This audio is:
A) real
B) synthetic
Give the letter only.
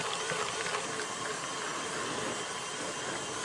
A